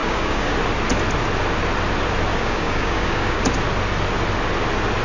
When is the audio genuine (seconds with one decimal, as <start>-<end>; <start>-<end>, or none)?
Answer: 0.5-2.3; 3.4-5.0